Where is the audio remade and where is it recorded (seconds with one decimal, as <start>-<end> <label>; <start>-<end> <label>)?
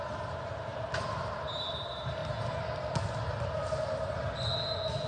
0.0-5.1 recorded